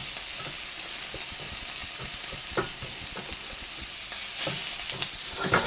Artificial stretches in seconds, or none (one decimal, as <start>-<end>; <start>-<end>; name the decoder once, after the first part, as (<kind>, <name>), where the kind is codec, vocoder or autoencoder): 1.8-2.5 (vocoder, BigVGAN v2)